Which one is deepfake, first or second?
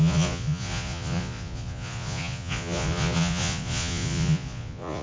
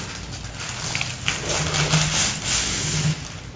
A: first